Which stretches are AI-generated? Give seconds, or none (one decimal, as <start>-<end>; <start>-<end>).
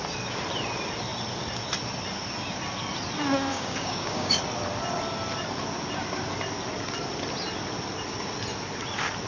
3.5-4.4